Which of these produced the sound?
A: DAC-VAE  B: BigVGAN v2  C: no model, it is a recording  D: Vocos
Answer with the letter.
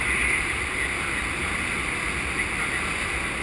C